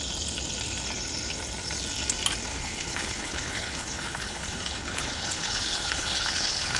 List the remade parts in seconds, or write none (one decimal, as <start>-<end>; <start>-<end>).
2.5-6.8